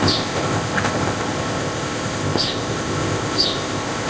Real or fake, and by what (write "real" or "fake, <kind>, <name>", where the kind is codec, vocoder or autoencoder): fake, codec, ZipCodec